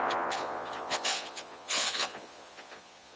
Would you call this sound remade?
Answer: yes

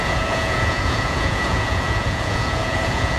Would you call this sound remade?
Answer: yes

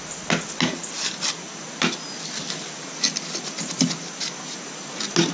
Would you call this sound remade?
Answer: no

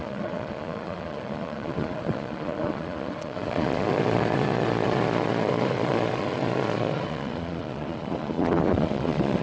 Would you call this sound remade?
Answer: yes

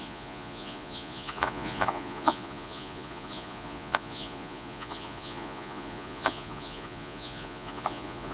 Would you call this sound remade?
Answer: yes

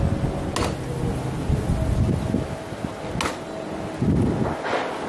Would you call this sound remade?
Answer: no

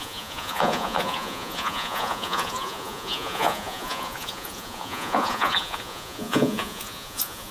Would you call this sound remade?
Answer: yes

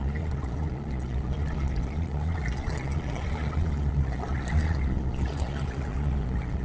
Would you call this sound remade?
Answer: yes